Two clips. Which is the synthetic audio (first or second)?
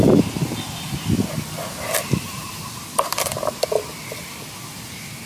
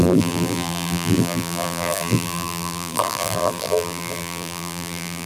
second